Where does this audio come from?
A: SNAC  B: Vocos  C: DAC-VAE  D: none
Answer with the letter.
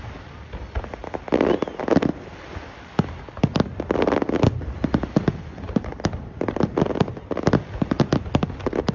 D